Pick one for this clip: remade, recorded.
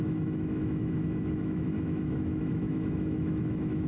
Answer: remade